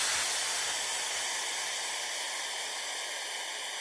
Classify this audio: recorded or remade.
recorded